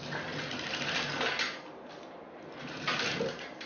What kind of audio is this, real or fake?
real